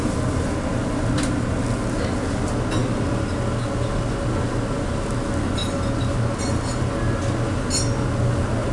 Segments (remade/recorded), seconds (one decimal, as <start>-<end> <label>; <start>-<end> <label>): 0.0-8.7 recorded